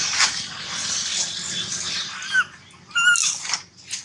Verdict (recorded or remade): recorded